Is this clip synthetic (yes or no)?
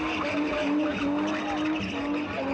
no